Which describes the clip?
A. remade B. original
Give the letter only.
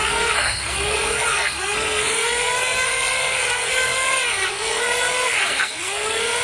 A